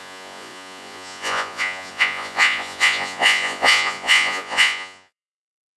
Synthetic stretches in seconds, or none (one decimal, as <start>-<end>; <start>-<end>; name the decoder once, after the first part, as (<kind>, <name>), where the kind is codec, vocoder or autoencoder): 0.0-5.8 (vocoder, Vocos)